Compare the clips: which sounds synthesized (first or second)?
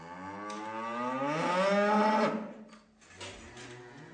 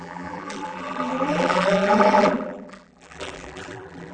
second